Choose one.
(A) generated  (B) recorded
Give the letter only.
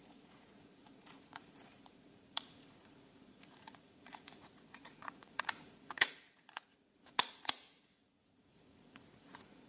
A